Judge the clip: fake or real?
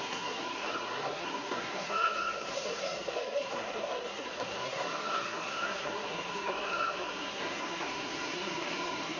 fake